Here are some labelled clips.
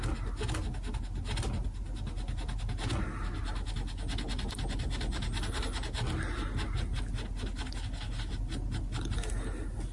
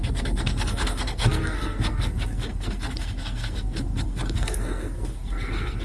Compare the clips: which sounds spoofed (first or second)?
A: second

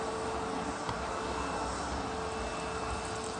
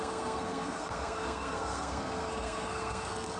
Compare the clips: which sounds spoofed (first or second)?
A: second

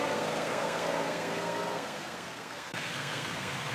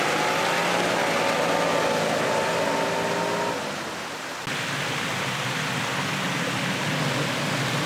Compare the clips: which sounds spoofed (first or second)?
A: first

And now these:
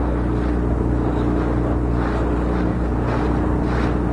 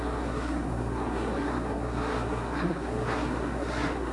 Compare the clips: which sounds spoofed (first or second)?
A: second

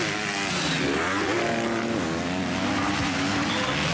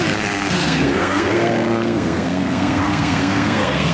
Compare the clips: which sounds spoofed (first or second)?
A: second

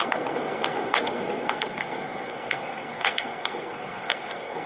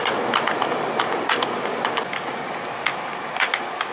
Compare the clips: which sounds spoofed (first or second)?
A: first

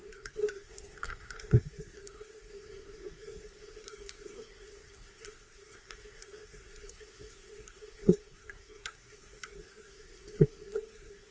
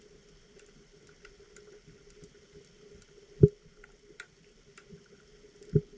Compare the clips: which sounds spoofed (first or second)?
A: first